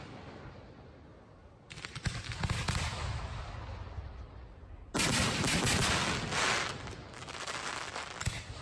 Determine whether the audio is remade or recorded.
recorded